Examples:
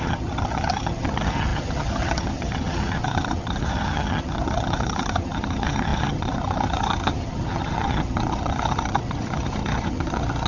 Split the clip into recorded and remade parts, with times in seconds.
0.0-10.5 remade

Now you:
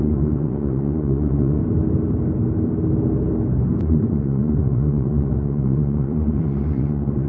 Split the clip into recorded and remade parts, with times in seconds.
0.0-1.6 remade; 1.6-3.8 recorded; 3.8-7.3 remade

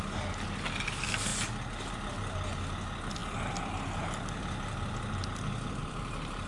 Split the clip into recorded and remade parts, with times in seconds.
0.0-5.8 recorded; 5.8-6.5 remade

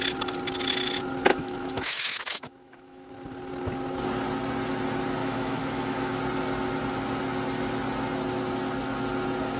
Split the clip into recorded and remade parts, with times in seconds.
0.0-1.3 recorded; 1.3-3.1 remade; 3.1-5.2 recorded; 5.2-6.2 remade; 6.2-9.6 recorded

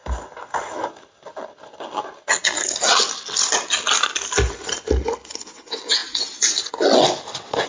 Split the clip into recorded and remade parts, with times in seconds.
0.0-7.7 recorded

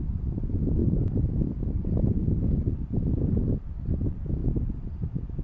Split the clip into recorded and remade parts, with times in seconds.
0.0-4.4 remade; 4.4-5.0 recorded; 5.0-5.4 remade

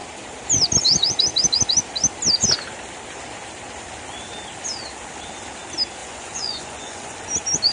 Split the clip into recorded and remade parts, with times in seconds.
0.0-6.0 recorded; 6.0-7.2 remade; 7.2-7.7 recorded

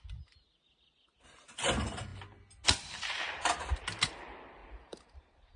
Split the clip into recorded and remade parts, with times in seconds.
0.0-4.6 recorded; 4.6-5.6 remade